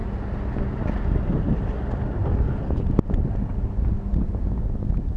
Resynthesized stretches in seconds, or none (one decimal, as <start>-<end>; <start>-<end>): 2.2-3.3